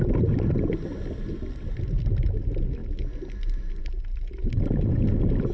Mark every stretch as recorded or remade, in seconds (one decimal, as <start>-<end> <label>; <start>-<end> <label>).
0.0-5.5 recorded